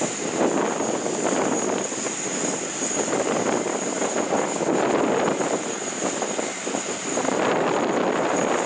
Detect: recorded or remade recorded